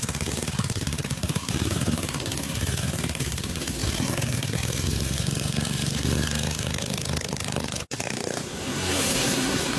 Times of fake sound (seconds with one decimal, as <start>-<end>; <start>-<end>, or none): 0.0-9.8